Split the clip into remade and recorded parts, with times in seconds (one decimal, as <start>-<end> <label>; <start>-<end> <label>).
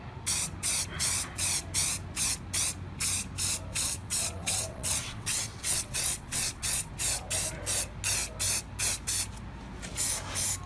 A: 0.0-3.7 recorded; 3.7-6.9 remade; 6.9-10.7 recorded